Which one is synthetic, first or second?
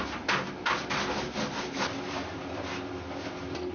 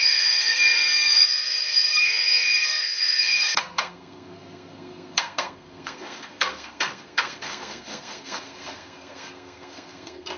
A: second